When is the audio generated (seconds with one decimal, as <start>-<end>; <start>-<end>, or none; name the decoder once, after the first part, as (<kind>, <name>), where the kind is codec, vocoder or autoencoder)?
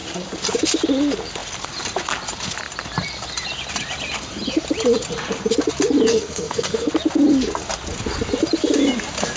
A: 6.1-6.9 (codec, SNAC)